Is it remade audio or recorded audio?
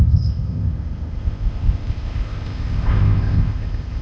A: remade